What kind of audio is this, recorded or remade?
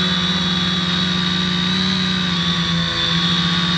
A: recorded